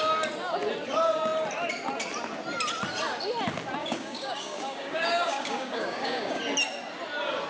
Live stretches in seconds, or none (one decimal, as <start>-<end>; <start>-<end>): 0.0-3.8; 6.4-7.5